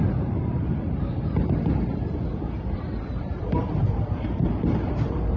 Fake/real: fake